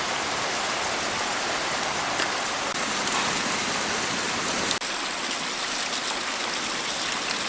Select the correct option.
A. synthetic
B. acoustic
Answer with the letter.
B